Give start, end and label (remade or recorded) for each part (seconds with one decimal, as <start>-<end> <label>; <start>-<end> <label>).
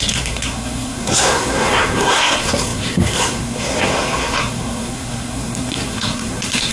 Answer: 0.0-6.7 remade